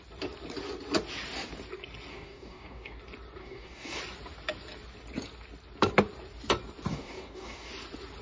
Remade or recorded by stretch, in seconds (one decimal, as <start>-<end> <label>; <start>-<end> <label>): 0.0-2.1 recorded; 2.1-3.0 remade; 3.0-3.4 recorded; 3.4-4.0 remade; 4.0-6.9 recorded; 6.9-7.7 remade; 7.7-8.2 recorded

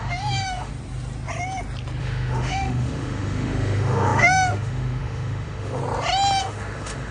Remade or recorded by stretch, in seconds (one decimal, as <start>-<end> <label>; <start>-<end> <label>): 0.0-0.7 remade; 0.7-2.0 recorded; 2.0-5.8 remade; 5.8-6.4 recorded; 6.4-7.1 remade